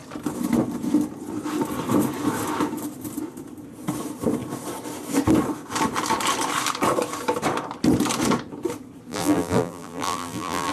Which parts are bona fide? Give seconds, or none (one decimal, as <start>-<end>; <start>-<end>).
0.0-9.1